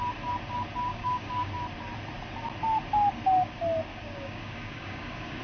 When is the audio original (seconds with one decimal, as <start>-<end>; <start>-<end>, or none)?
0.0-0.9; 1.5-3.9